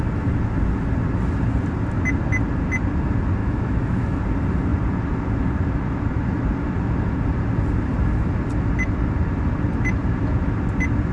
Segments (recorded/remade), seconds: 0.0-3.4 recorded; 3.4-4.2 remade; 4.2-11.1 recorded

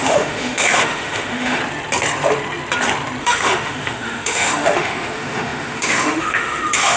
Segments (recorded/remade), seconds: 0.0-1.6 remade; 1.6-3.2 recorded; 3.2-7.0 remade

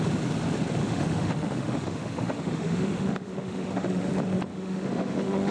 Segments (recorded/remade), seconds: 0.0-0.8 recorded; 0.8-4.1 remade; 4.1-4.5 recorded; 4.5-5.5 remade

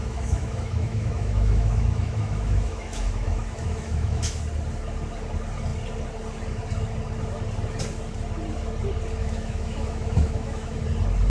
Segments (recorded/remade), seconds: 0.0-4.4 remade; 4.4-9.2 recorded; 9.2-10.8 remade; 10.8-11.3 recorded

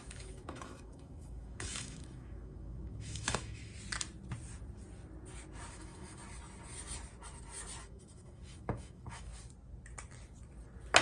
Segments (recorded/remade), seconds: 0.0-3.7 remade; 3.7-5.7 recorded; 5.7-6.2 remade; 6.2-7.8 recorded; 7.8-9.3 remade; 9.3-11.0 recorded